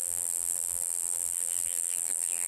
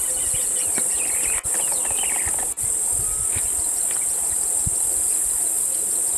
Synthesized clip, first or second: first